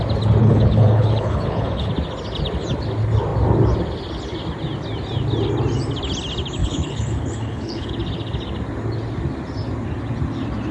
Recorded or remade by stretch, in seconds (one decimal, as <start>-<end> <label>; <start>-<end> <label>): 0.0-0.4 recorded; 0.4-1.9 remade; 1.9-6.6 recorded; 6.6-7.9 remade; 7.9-10.7 recorded